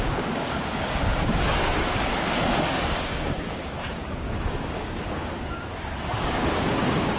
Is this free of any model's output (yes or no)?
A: no